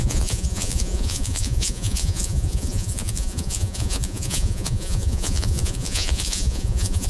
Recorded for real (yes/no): no